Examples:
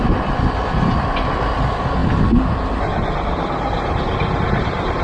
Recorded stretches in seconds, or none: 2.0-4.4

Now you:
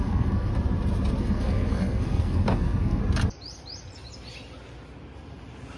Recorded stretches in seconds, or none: 0.5-1.2; 3.0-5.8

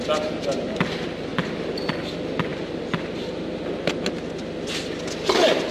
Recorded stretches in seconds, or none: 0.0-1.3; 1.9-2.5; 3.6-5.7

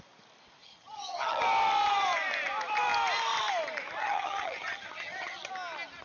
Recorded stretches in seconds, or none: 0.0-0.6; 1.4-4.0; 5.5-6.0

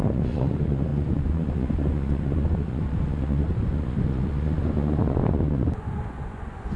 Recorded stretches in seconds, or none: none

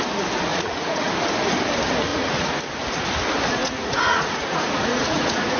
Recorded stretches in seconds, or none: 0.0-0.5; 1.1-2.1; 2.6-3.6

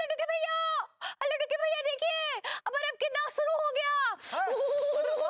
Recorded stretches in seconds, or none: 0.0-5.3

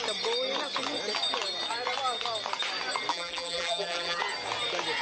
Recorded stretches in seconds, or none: 0.0-3.1; 4.2-5.0